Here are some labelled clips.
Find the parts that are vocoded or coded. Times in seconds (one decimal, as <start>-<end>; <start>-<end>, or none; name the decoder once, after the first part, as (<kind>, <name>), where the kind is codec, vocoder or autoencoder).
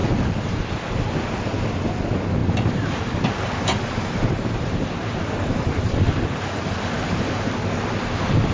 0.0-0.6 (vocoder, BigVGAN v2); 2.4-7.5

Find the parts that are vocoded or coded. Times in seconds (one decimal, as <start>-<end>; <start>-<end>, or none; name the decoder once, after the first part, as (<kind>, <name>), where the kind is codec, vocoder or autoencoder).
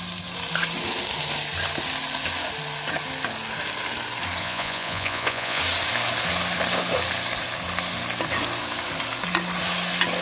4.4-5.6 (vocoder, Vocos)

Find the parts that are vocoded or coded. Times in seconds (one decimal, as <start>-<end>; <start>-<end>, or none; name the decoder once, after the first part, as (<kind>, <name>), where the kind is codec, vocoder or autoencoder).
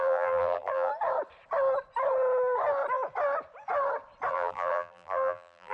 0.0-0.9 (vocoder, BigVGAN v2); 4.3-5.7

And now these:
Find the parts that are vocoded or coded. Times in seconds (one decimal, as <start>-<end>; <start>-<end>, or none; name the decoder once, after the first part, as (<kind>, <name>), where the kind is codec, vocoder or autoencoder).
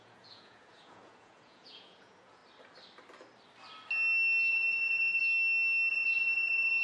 0.0-2.4 (vocoder, Vocos); 4.5-5.2; 5.9-6.8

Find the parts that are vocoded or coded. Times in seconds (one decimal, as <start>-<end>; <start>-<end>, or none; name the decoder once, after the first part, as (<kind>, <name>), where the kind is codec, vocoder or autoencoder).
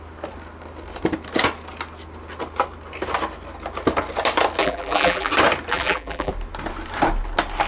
4.6-5.3 (vocoder, BigVGAN v2); 5.7-6.3